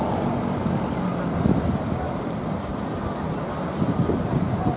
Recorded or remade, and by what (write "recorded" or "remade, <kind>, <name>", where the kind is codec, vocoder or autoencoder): recorded